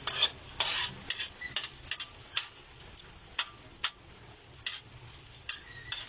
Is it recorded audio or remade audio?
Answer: recorded